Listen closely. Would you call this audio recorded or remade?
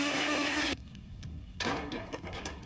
remade